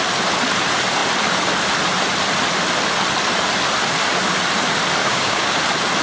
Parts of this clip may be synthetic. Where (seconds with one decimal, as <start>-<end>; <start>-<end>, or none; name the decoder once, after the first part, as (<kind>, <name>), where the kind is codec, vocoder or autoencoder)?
5.0-5.6 (codec, DAC)